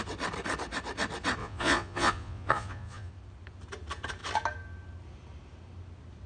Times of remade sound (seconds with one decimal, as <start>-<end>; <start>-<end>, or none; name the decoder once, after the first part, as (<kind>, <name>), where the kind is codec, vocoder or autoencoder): 1.4-3.1 (vocoder, Vocos)

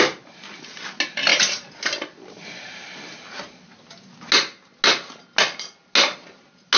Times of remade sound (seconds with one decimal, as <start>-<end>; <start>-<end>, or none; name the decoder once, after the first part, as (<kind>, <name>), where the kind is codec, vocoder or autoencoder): none

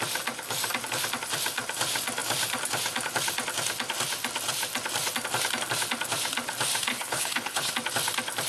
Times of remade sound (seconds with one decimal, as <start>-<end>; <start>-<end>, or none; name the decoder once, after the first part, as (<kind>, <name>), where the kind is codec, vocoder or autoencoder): 6.9-7.7 (codec, HILCodec)

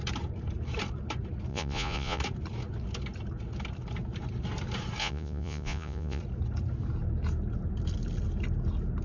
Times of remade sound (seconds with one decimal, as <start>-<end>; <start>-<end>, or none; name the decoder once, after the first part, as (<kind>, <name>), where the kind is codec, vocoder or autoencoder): 1.5-2.2 (vocoder, Vocos); 5.0-6.2

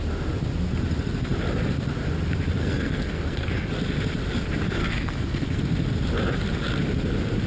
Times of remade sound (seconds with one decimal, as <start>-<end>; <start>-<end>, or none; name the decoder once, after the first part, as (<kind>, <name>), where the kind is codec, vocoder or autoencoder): 2.6-3.7 (codec, SNAC); 4.8-5.6

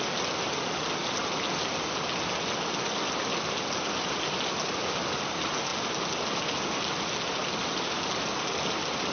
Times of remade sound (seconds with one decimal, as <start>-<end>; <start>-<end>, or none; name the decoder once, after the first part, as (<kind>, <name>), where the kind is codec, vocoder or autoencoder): none

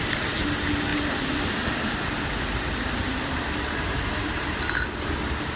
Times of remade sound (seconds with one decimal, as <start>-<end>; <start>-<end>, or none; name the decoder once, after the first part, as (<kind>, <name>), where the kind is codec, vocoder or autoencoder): none

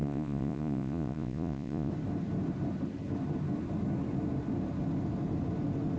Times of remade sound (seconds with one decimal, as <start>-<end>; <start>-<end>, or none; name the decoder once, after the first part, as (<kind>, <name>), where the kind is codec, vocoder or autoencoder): 0.0-1.9 (vocoder, Vocos)